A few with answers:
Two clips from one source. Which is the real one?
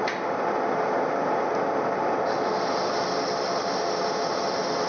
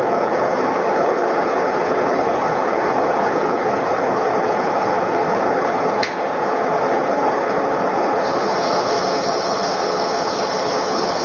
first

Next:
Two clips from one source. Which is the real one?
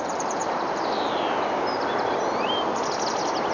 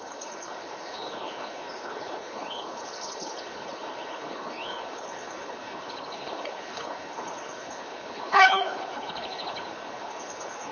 first